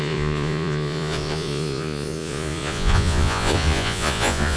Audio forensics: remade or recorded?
remade